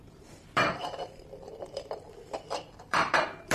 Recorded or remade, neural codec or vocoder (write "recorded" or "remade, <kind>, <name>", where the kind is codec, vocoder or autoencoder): remade, vocoder, BigVGAN v2